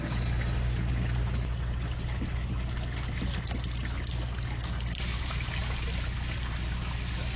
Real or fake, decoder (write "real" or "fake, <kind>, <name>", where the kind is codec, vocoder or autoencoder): real